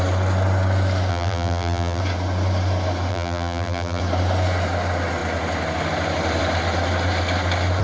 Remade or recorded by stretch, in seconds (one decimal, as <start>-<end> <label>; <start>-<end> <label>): 0.0-1.1 recorded; 1.1-2.0 remade; 2.0-3.1 recorded; 3.1-4.0 remade; 4.0-7.8 recorded